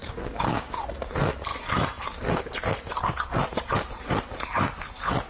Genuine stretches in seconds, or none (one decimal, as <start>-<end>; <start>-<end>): 0.8-5.3